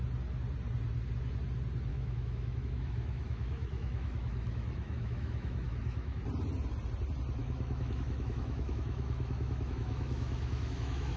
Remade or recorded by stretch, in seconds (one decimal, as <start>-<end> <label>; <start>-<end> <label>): 0.0-1.9 recorded; 1.9-6.2 remade; 6.2-7.4 recorded; 7.4-11.2 remade